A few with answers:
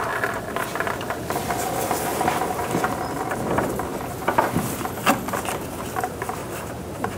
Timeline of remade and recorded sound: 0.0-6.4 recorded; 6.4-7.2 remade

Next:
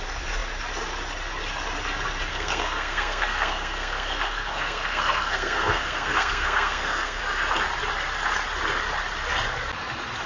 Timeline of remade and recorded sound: 0.0-2.3 recorded; 2.3-7.2 remade; 7.2-10.3 recorded

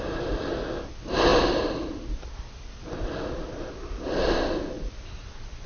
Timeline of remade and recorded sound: 0.0-5.7 recorded